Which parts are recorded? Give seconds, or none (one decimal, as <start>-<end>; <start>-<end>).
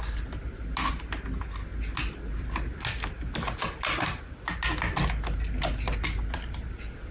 0.0-7.1